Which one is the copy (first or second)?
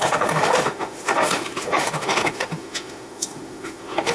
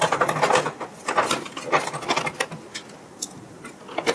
first